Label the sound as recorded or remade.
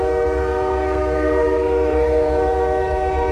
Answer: remade